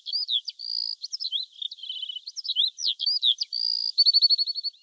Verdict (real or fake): real